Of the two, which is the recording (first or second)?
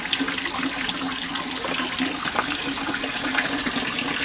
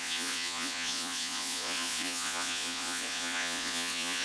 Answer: first